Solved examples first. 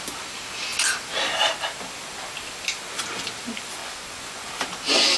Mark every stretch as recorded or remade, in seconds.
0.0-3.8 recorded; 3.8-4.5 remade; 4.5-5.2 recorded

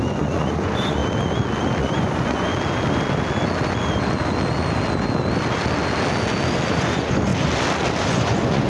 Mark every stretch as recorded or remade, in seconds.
0.0-1.0 remade; 1.0-1.8 recorded; 1.8-2.5 remade; 2.5-6.7 recorded; 6.7-7.3 remade; 7.3-8.0 recorded; 8.0-8.7 remade

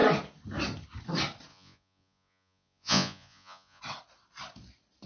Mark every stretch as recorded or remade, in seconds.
0.0-1.5 recorded; 1.5-3.8 remade; 3.8-5.1 recorded